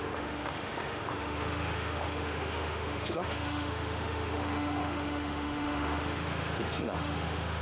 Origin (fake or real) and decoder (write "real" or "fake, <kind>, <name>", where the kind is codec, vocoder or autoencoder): fake, autoencoder, DAC-VAE